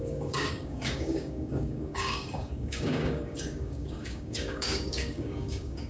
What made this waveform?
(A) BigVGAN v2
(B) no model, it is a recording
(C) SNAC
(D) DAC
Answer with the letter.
D